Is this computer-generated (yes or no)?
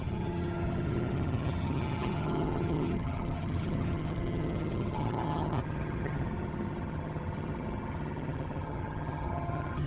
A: yes